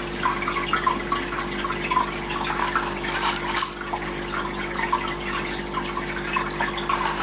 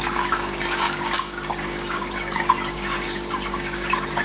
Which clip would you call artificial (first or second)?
second